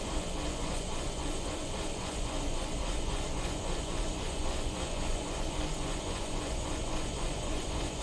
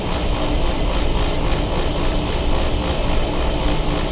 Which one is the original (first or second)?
second